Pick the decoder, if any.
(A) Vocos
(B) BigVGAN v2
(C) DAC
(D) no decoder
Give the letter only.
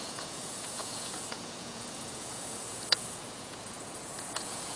A